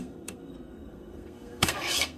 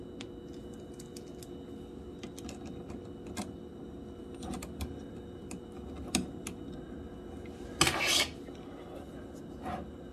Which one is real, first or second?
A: second